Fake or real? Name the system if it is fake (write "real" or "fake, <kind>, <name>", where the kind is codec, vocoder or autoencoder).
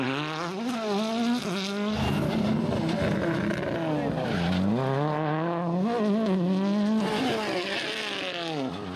real